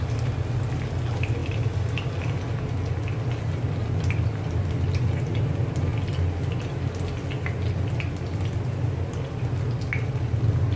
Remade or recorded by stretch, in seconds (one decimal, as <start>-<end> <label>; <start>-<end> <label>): 0.0-10.8 recorded